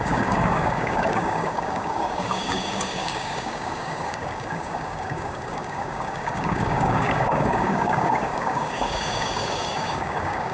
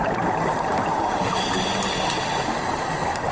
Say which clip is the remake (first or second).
first